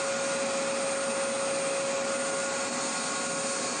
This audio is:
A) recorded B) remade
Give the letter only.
A